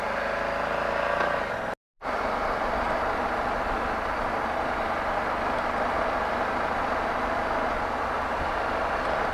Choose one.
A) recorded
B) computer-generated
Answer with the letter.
A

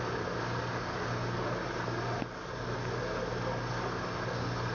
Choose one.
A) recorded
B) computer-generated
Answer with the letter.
A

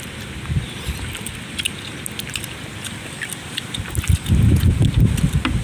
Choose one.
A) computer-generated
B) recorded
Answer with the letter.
B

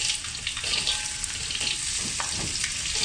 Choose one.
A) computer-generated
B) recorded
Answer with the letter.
B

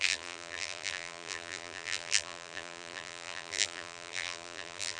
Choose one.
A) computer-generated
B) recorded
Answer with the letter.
A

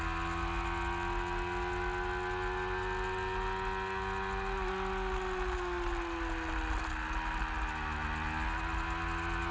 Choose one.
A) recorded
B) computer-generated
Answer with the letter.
A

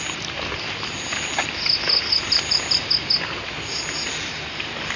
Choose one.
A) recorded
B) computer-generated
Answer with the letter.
A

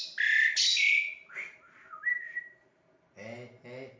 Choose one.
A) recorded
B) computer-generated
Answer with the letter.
A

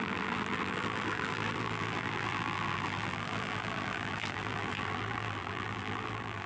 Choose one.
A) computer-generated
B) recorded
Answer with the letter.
A